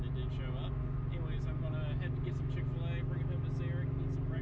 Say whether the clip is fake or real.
real